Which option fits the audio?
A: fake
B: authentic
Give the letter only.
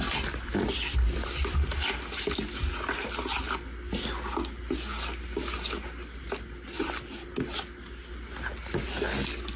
B